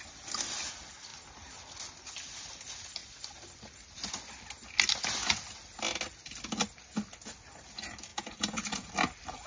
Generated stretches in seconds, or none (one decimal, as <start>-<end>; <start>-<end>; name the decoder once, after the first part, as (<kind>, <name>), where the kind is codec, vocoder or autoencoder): 8.1-8.9 (vocoder, Vocos)